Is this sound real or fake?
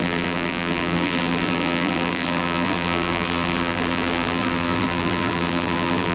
fake